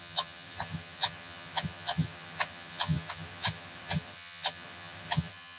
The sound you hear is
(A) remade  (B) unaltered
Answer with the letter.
A